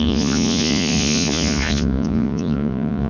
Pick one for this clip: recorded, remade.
remade